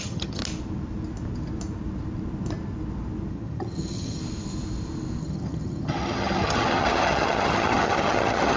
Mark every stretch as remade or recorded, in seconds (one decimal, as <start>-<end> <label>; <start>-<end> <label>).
0.0-0.4 remade; 0.4-3.3 recorded; 3.3-4.2 remade; 4.2-5.2 recorded; 5.2-8.6 remade